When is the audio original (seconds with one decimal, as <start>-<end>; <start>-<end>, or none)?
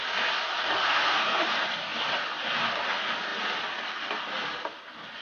0.0-0.8; 1.4-5.2